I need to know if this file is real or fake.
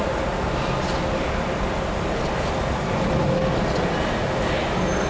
real